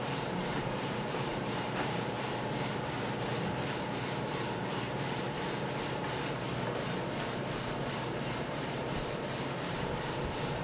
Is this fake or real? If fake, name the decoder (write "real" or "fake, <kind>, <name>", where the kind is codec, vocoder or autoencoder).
fake, vocoder, BigVGAN v2